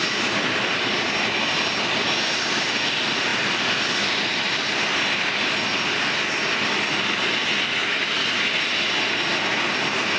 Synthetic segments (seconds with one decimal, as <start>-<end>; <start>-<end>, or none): none